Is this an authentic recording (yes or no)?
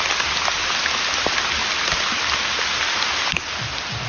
yes